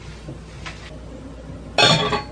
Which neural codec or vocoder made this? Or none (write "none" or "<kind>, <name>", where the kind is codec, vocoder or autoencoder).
none